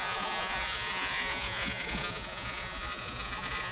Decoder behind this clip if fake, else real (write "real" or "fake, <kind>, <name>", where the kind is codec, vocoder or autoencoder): fake, vocoder, Vocos